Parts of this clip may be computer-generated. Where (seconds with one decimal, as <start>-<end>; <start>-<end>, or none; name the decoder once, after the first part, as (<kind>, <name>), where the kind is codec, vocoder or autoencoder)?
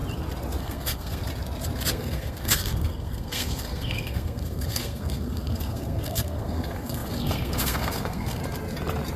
0.6-1.2 (codec, SNAC); 1.9-8.4